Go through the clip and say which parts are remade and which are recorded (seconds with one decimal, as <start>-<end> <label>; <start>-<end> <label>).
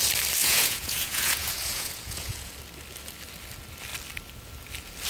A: 0.0-0.4 recorded; 0.4-2.5 remade; 2.5-5.1 recorded